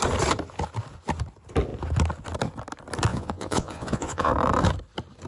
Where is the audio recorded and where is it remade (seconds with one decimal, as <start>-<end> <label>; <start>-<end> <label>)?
0.0-3.1 recorded; 3.1-4.3 remade; 4.3-5.3 recorded